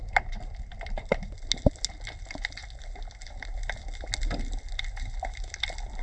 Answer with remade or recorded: recorded